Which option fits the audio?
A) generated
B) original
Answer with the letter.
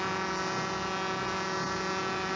A